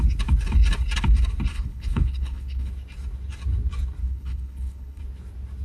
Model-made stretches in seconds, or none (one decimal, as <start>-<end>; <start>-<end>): 1.5-2.7; 4.0-5.0